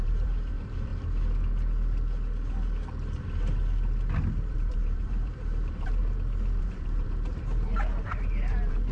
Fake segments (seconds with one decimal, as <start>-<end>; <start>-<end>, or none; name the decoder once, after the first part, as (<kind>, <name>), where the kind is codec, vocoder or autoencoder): 0.0-0.9 (vocoder, BigVGAN v2); 4.5-6.0; 6.6-8.9